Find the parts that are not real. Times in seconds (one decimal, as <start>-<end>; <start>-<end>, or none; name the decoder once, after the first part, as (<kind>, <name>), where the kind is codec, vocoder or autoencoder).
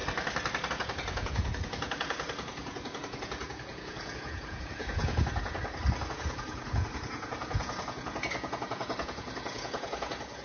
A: 0.7-5.6 (vocoder, Vocos); 6.1-10.4